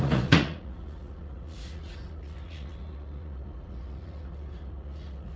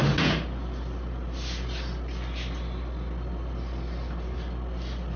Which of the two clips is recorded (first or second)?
second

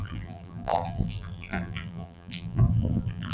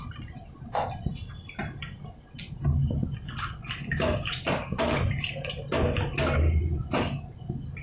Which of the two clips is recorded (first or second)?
second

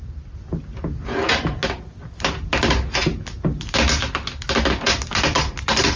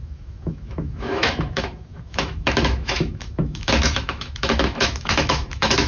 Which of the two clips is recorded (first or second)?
first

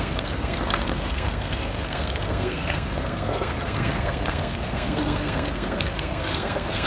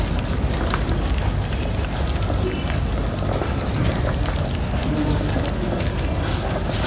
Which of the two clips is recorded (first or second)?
second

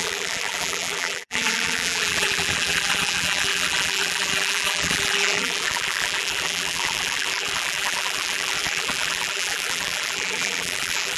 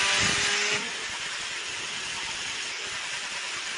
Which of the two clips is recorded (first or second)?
second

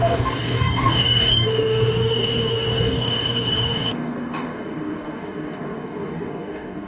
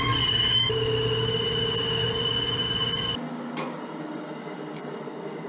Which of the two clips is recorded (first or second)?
second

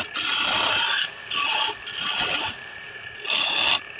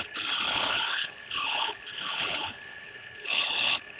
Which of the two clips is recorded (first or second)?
first